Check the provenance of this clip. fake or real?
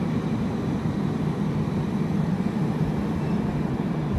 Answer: real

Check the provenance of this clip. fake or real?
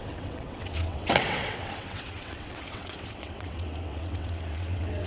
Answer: fake